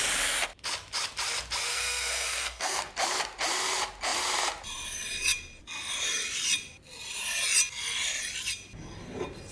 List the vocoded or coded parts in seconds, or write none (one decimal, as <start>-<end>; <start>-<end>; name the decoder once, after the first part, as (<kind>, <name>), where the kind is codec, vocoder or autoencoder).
1.7-2.9 (codec, SNAC)